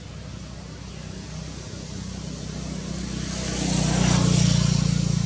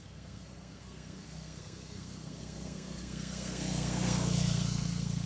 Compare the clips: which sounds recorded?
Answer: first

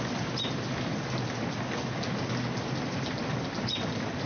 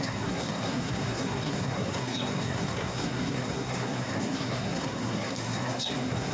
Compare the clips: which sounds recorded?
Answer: first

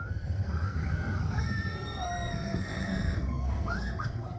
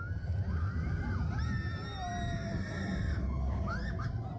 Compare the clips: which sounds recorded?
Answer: second